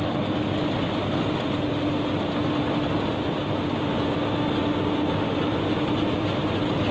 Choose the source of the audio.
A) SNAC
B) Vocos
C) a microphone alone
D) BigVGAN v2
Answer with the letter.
C